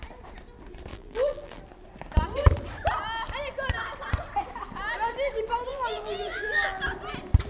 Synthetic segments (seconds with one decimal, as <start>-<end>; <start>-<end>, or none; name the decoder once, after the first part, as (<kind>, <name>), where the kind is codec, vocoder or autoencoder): 0.9-1.6 (vocoder, BigVGAN v2); 5.7-6.8